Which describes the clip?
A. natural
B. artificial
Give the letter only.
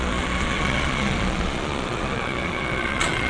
B